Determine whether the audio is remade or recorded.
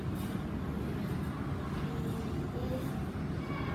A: recorded